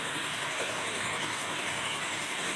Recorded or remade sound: remade